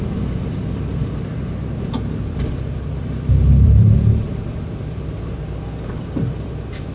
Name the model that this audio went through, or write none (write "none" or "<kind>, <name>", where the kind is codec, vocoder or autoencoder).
vocoder, BigVGAN v2